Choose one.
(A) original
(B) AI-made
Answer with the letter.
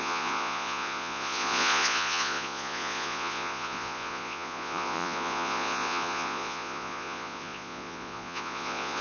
B